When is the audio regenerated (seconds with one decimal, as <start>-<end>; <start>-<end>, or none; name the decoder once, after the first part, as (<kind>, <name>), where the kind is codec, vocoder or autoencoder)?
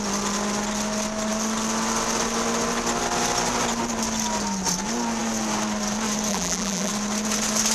6.3-6.9 (vocoder, BigVGAN v2)